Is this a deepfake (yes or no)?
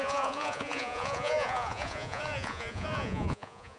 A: yes